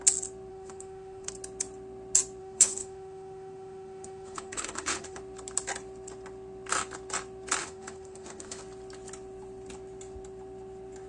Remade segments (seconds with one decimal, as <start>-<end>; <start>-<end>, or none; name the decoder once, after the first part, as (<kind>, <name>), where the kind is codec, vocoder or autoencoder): 0.5-1.3 (autoencoder, DAC-VAE); 2.4-5.2; 7.6-8.6